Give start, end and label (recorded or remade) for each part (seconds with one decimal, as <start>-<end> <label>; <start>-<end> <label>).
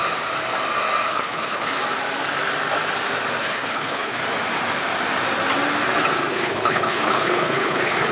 0.0-1.1 recorded; 1.1-1.8 remade; 1.8-3.4 recorded; 3.4-4.2 remade; 4.2-6.3 recorded; 6.3-8.1 remade